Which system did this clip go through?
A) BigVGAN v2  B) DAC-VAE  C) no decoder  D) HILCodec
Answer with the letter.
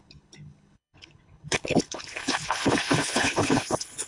D